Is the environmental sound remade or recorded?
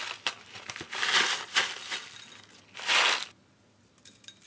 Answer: recorded